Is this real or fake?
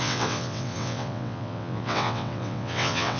fake